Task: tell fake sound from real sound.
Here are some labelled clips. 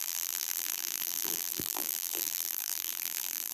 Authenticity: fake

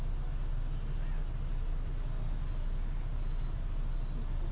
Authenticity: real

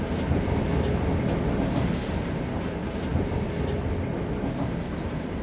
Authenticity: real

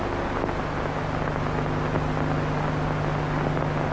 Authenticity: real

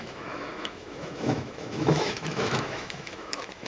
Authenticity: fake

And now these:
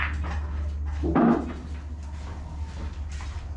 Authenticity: real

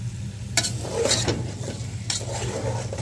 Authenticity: real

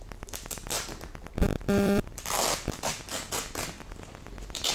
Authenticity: fake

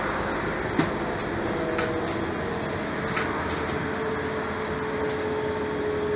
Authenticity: real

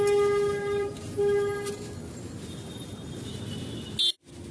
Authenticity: real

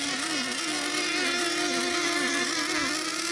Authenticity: real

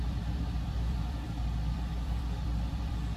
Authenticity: fake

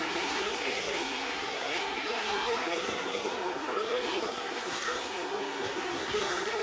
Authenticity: fake